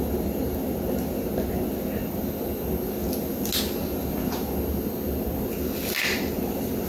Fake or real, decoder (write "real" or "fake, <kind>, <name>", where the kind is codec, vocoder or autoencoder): real